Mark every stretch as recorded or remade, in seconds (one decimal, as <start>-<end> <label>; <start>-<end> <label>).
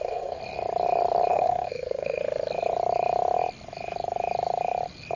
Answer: 0.0-0.4 remade; 0.4-1.3 recorded; 1.3-2.2 remade; 2.2-5.2 recorded